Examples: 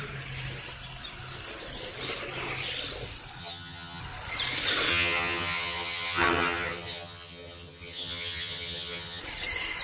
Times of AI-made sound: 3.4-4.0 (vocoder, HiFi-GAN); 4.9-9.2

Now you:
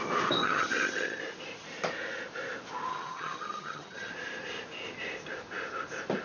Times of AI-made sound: 0.4-1.2 (vocoder, HiFi-GAN); 2.9-4.1

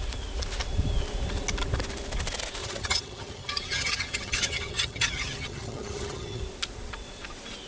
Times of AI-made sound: 2.6-6.4 (vocoder, HiFi-GAN)

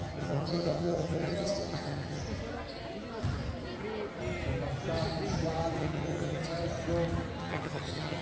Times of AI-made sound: 0.0-2.2 (vocoder, HiFi-GAN); 5.8-6.4; 7.4-8.2

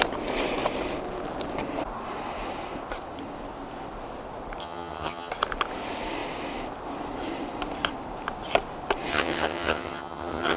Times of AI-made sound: 4.6-5.3 (vocoder, HiFi-GAN); 9.1-10.6

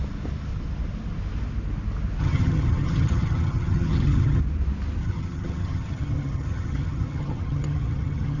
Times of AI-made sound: 2.2-4.4 (vocoder, HiFi-GAN); 5.0-8.4

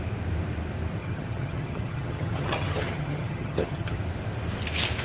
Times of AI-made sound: 1.0-4.0 (vocoder, HiFi-GAN)

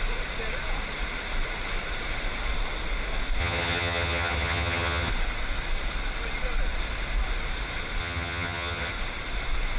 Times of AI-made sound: 3.4-5.1 (vocoder, HiFi-GAN); 8.0-8.9